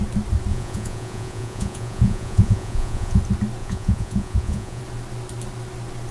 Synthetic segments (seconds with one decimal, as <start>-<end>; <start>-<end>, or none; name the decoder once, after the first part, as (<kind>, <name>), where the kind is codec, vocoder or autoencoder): 0.5-3.2 (vocoder, Vocos); 3.6-4.8